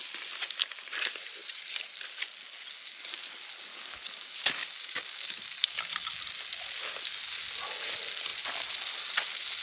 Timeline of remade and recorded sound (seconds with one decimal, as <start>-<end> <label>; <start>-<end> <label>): 0.0-3.7 recorded; 3.7-5.8 remade; 5.8-9.6 recorded